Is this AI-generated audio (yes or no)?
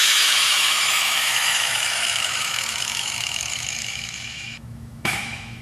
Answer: yes